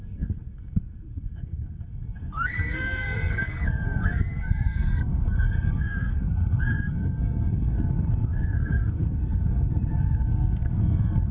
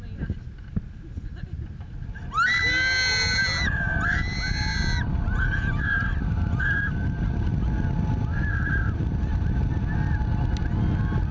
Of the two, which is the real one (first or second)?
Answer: second